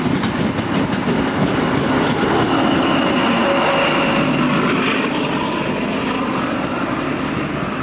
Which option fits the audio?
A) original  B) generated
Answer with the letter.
A